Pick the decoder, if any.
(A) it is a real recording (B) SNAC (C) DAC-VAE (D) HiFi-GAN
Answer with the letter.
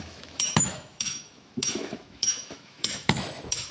C